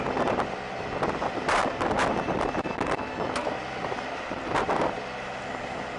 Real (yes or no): yes